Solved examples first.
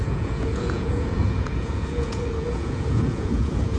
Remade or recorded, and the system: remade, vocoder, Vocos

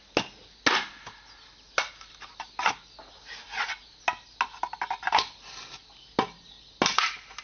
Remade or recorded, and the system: recorded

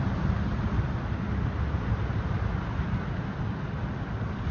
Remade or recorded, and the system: recorded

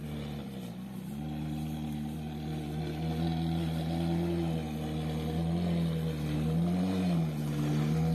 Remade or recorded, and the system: recorded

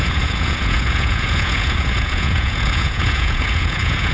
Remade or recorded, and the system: remade, vocoder, Vocos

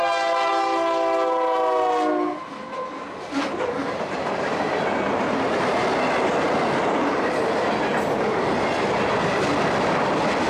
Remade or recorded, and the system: recorded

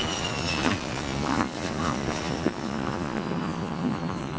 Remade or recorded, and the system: remade, vocoder, Vocos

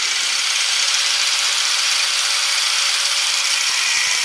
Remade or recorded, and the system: recorded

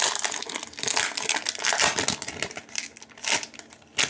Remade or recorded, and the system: recorded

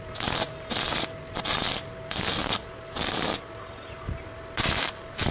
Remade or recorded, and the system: recorded